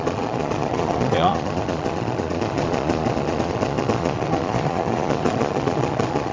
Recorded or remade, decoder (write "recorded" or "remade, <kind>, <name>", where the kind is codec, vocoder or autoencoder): remade, vocoder, Vocos